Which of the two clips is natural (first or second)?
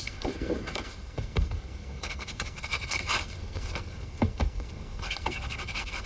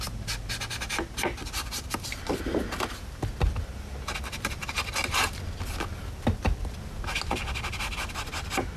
second